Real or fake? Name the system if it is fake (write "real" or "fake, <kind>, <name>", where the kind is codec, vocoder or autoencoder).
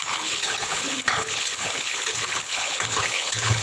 fake, codec, HILCodec